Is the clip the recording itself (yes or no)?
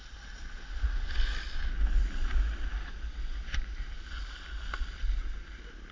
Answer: yes